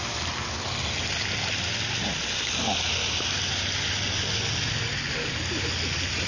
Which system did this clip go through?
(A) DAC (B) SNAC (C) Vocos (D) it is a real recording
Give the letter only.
D